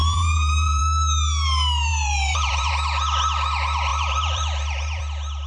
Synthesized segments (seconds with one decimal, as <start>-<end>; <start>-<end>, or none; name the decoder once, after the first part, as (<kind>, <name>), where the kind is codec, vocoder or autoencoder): 0.0-0.8 (vocoder, BigVGAN v2); 1.9-2.7; 3.9-5.0